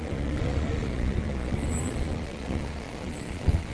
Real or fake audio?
fake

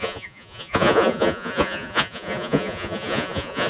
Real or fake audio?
fake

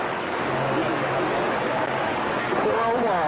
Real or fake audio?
fake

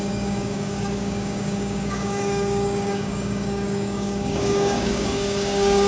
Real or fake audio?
fake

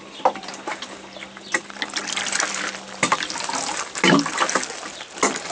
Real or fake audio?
real